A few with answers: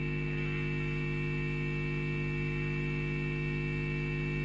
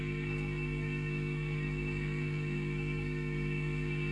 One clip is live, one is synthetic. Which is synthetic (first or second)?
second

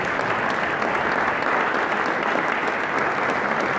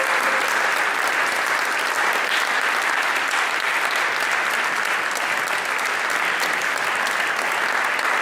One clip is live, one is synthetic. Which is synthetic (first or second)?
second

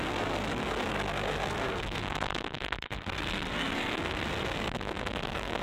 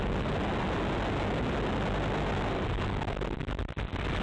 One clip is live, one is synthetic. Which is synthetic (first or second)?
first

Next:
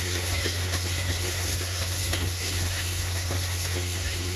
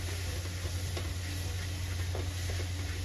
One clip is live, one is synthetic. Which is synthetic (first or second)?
first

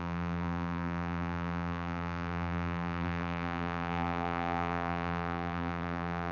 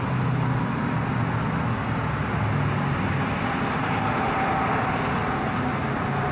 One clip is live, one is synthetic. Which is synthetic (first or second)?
first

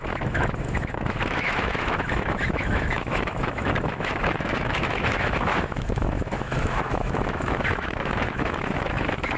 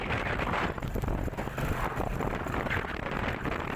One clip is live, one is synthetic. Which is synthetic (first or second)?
first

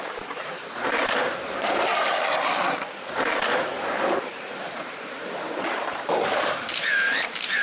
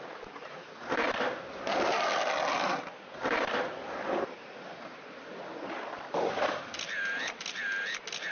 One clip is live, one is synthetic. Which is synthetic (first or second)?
first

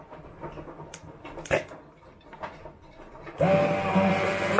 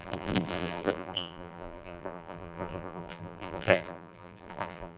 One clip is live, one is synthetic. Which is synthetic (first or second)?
second